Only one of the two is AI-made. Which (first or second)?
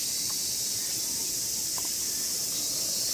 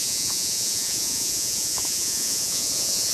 second